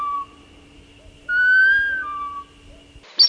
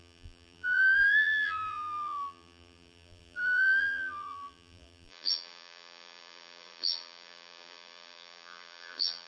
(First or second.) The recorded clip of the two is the first